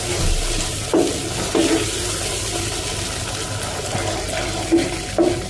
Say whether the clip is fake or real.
real